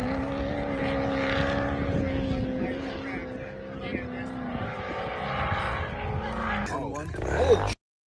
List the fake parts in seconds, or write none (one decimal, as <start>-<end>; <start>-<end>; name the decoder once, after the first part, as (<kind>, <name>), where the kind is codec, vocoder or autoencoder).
none